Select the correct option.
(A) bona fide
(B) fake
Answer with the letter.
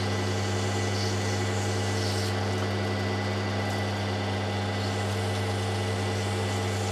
A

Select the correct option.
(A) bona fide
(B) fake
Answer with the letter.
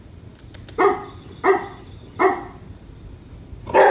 A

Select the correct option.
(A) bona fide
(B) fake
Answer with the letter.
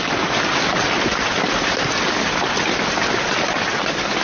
A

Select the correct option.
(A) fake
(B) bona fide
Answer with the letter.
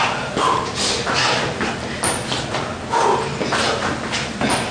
B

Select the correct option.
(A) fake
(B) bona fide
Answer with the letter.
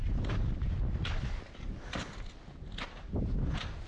B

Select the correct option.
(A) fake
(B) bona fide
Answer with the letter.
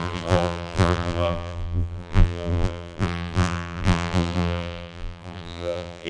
A